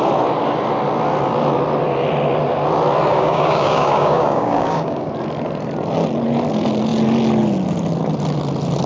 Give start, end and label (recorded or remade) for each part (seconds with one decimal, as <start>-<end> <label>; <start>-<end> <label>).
0.0-3.1 recorded; 3.1-5.1 remade; 5.1-8.9 recorded